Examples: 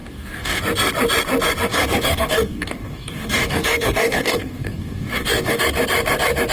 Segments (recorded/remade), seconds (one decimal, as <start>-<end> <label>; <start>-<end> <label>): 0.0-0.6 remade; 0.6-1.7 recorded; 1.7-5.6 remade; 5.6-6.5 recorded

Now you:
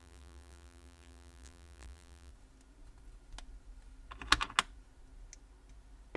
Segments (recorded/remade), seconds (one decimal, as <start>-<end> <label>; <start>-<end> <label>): 0.0-2.3 remade; 2.3-6.2 recorded

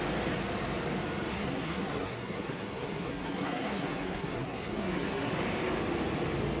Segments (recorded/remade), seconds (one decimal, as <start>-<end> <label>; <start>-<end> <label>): 0.0-1.3 recorded; 1.3-5.3 remade; 5.3-6.6 recorded

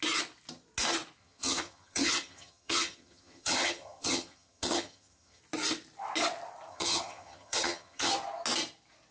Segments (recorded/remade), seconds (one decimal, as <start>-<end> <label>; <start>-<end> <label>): 0.0-1.2 recorded; 1.2-5.4 remade; 5.4-6.7 recorded; 6.7-8.1 remade; 8.1-9.1 recorded

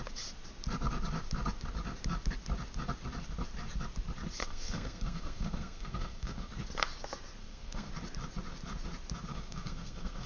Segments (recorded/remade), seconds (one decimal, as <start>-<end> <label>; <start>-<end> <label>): 0.0-4.4 recorded; 4.4-6.5 remade; 6.5-7.4 recorded; 7.4-7.9 remade; 7.9-9.3 recorded; 9.3-10.3 remade

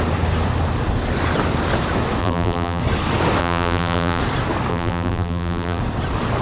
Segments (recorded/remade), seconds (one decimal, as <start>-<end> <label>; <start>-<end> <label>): 0.0-2.2 recorded; 2.2-2.8 remade; 2.8-3.4 recorded; 3.4-4.2 remade; 4.2-4.7 recorded; 4.7-5.8 remade; 5.8-6.4 recorded

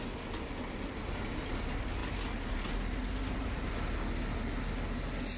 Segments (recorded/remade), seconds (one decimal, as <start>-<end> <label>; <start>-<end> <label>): 0.0-5.4 recorded